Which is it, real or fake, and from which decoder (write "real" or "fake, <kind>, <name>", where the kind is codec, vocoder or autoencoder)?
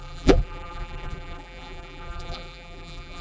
fake, vocoder, BigVGAN v2